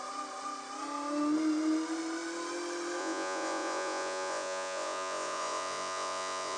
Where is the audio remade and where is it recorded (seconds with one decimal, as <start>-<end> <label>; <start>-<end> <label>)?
0.0-3.0 recorded; 3.0-6.6 remade